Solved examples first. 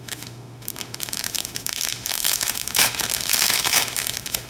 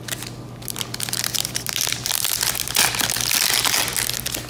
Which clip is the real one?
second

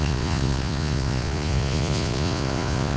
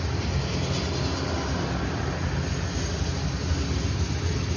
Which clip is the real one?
second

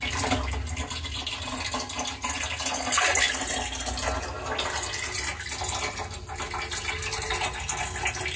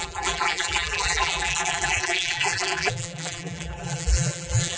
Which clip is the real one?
first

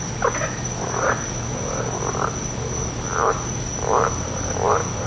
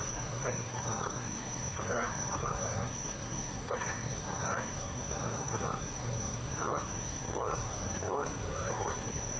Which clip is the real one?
first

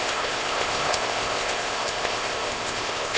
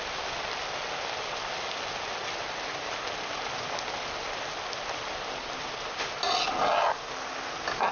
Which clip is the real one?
second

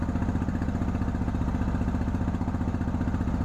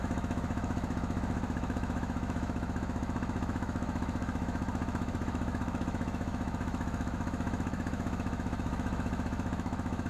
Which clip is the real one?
first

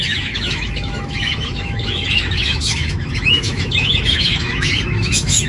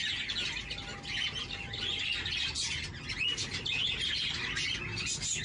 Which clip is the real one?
second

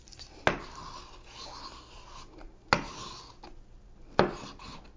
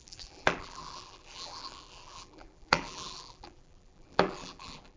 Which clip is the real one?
first